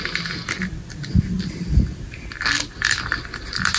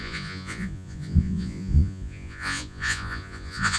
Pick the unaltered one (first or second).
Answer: first